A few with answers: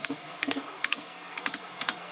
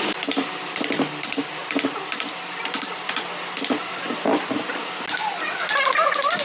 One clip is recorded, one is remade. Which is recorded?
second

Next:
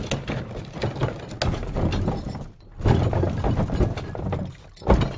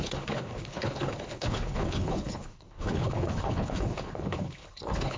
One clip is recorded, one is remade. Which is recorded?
first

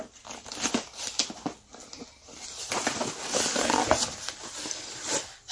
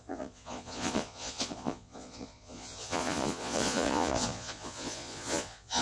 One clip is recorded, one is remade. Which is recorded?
first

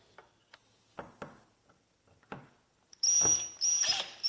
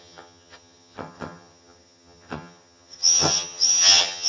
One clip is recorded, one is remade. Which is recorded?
first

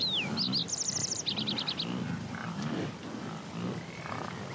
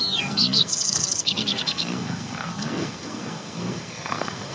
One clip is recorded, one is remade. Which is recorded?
first